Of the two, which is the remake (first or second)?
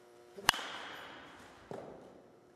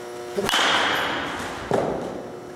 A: first